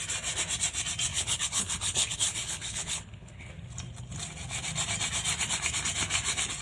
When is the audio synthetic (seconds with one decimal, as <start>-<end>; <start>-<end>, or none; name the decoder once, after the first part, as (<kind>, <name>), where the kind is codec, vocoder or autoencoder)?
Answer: 1.1-3.5 (codec, HILCodec)